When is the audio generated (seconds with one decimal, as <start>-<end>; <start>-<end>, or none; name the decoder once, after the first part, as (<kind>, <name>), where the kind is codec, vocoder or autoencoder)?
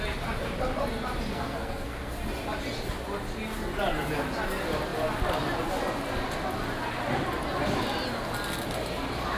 1.3-2.1 (codec, SNAC)